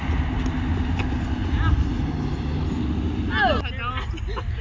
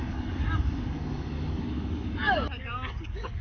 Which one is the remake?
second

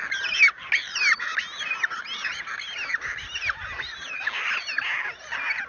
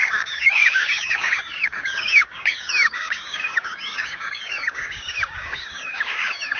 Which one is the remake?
second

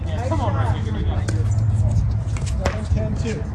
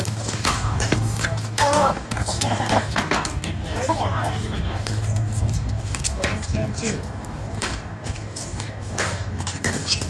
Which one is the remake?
second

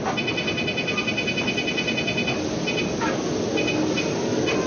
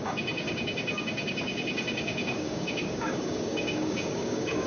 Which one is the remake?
second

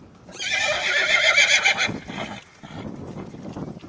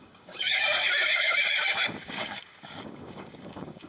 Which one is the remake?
second